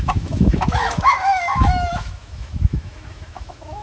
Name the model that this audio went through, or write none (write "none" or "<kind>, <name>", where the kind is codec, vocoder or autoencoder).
autoencoder, DAC-VAE